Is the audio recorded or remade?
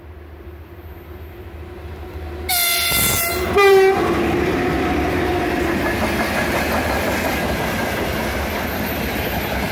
recorded